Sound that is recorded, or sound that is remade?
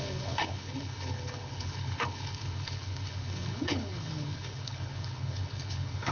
remade